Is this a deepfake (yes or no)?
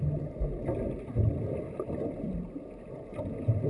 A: no